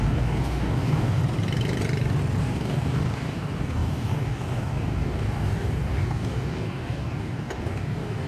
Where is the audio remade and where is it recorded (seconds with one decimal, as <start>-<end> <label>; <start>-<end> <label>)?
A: 0.0-1.2 remade; 1.2-2.4 recorded; 2.4-8.3 remade